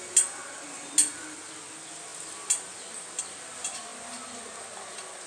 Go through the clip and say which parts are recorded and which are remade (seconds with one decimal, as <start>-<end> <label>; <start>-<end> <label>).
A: 0.0-5.3 recorded